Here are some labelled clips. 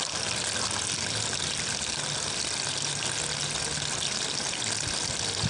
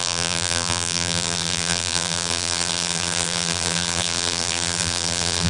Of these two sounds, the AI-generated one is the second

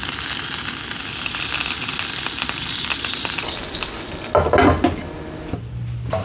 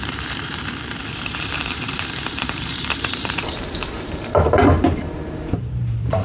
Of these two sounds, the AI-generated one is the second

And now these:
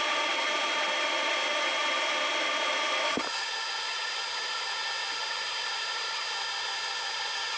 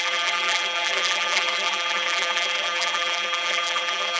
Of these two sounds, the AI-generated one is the second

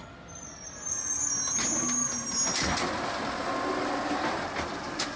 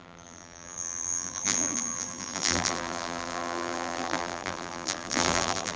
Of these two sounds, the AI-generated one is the second